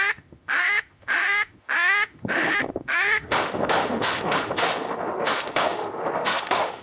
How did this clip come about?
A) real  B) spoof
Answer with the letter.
B